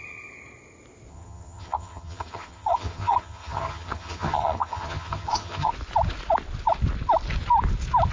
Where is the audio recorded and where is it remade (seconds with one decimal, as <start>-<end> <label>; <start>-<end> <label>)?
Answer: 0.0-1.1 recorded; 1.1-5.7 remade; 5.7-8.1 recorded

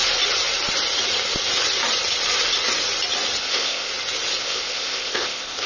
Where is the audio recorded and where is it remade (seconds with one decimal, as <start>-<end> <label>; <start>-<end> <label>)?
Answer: 0.0-3.4 recorded; 3.4-3.9 remade; 3.9-4.4 recorded; 4.4-5.7 remade

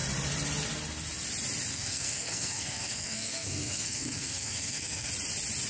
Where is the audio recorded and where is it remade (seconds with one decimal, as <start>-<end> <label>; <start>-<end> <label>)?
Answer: 0.0-1.7 recorded; 1.7-5.1 remade; 5.1-5.7 recorded